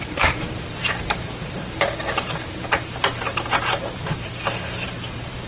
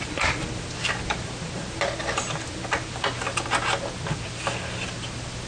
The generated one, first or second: first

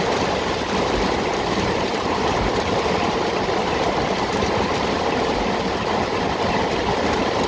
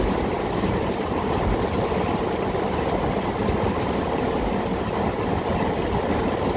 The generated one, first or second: first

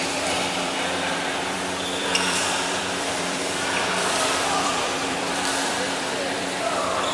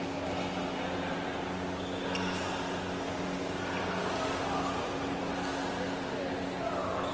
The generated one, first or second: first